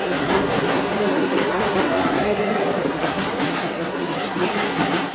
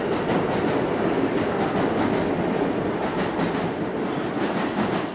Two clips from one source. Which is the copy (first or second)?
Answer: first